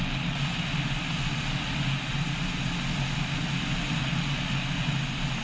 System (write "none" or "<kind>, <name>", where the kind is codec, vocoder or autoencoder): none